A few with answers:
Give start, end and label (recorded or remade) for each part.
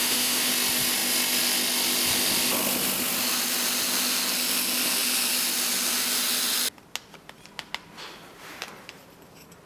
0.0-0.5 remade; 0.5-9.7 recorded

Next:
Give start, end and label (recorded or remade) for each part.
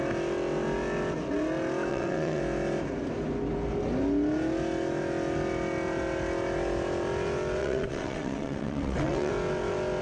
0.0-1.9 recorded; 1.9-2.4 remade; 2.4-7.6 recorded; 7.6-9.3 remade; 9.3-10.0 recorded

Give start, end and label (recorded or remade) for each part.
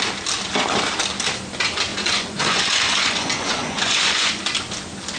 0.0-1.9 recorded; 1.9-4.4 remade; 4.4-5.2 recorded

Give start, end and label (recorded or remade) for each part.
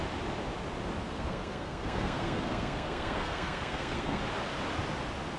0.0-1.0 recorded; 1.0-4.2 remade; 4.2-5.4 recorded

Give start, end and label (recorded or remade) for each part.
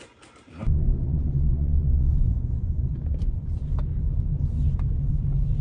0.0-0.7 recorded; 0.7-3.7 remade; 3.7-5.6 recorded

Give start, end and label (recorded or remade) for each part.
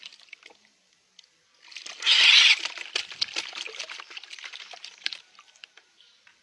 0.0-0.7 remade; 0.7-4.4 recorded; 4.4-6.4 remade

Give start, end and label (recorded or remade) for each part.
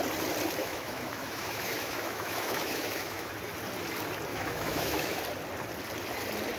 0.0-0.6 recorded; 0.6-3.3 remade; 3.3-4.3 recorded; 4.3-5.2 remade; 5.2-6.6 recorded